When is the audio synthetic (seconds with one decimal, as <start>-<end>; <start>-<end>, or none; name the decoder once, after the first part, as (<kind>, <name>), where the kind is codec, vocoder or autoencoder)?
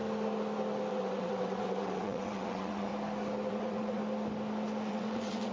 0.9-2.9 (vocoder, WaveNeXt); 3.5-4.0; 4.9-5.5